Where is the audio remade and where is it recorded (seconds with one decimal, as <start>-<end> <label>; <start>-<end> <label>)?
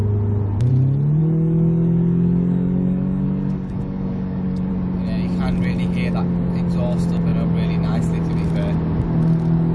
0.0-1.2 recorded; 1.2-4.7 remade; 4.7-9.7 recorded